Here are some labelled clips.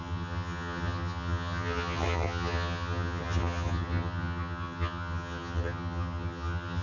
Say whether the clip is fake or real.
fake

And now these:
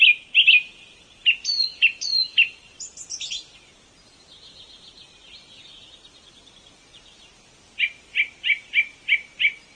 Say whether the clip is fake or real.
real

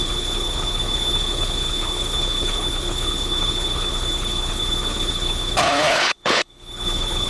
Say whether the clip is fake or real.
fake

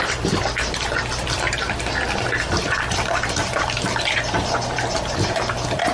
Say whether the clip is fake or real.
fake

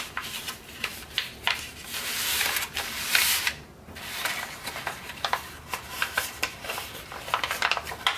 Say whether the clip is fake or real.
fake